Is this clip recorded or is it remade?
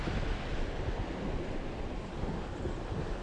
recorded